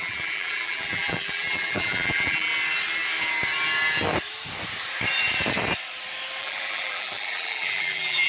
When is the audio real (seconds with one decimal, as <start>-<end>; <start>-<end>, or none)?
2.5-6.4